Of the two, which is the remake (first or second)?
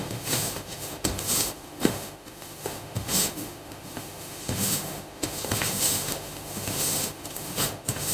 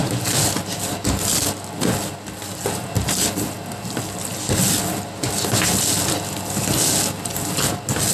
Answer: first